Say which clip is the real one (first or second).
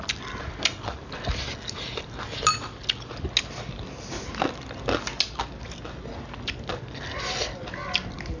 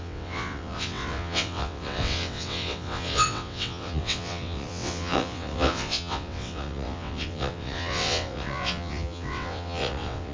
first